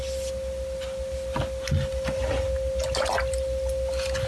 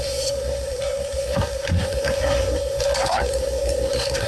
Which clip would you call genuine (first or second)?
first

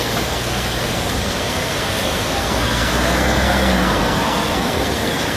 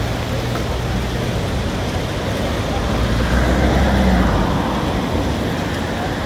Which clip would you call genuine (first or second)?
second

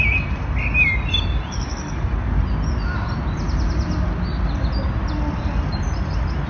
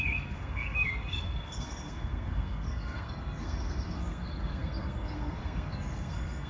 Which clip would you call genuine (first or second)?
first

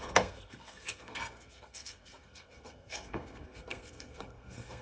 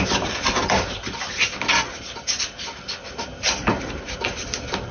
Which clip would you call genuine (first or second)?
second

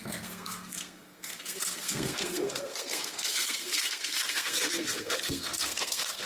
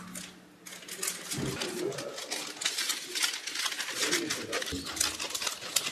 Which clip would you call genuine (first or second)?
second